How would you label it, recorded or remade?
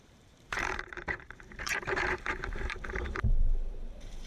remade